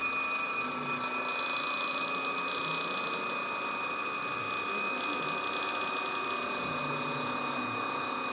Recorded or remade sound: recorded